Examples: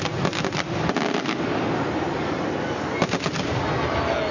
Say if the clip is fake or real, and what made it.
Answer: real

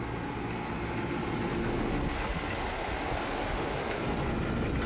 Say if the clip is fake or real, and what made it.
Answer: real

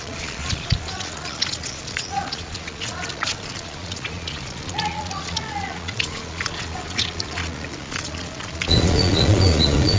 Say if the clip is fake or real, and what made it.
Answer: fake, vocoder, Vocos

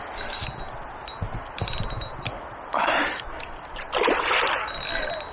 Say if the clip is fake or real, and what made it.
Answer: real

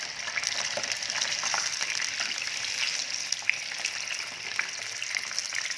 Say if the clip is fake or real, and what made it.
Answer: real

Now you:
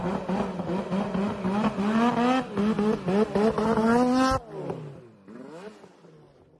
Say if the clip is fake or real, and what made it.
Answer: real